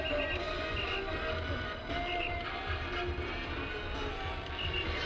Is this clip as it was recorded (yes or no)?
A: yes